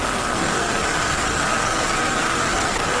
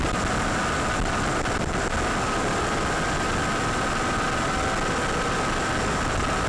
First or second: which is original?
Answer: second